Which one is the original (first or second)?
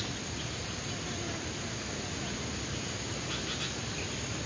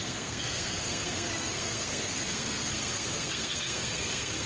first